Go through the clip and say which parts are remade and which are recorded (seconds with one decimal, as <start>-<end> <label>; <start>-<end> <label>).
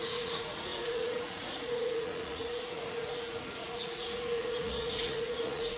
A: 0.0-5.8 remade